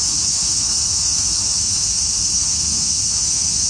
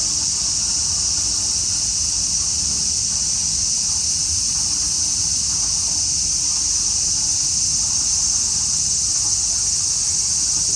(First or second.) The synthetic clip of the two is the first